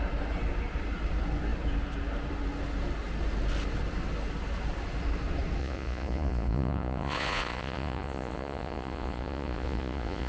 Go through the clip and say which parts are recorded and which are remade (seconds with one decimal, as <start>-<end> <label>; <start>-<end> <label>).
0.0-5.6 recorded; 5.6-10.3 remade